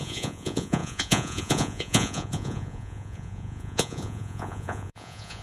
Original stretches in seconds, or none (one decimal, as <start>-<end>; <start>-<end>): none